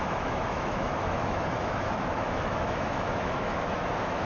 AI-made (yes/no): yes